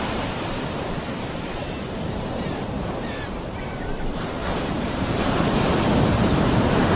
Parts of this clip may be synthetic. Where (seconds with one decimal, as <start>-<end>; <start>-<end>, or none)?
0.0-4.4; 6.0-7.0